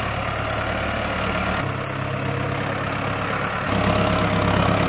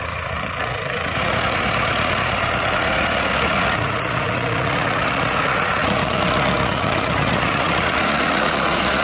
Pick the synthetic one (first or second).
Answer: second